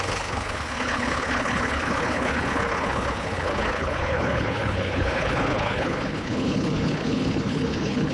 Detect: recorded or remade remade